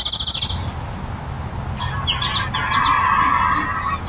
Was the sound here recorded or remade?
recorded